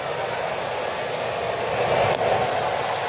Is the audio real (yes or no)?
yes